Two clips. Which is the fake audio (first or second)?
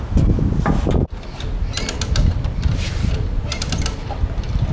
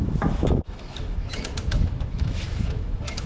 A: second